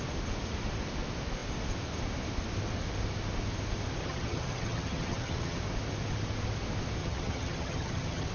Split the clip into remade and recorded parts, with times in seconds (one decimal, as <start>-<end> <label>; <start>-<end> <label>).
0.0-4.0 recorded; 4.0-5.6 remade; 5.6-7.0 recorded; 7.0-8.3 remade